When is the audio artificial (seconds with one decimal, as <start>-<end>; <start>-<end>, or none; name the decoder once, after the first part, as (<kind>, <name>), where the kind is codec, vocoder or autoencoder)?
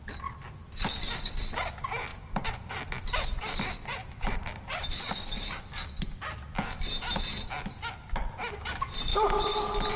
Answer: 2.1-2.7 (vocoder, BigVGAN v2); 4.0-5.3; 9.1-9.6